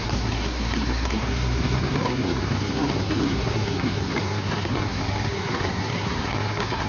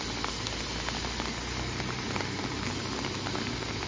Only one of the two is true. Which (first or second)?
second